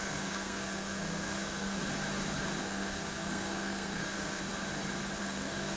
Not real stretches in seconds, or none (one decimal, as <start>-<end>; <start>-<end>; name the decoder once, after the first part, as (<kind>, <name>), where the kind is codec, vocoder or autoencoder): 0.0-1.8 (codec, SNAC); 2.6-4.4; 5.2-5.8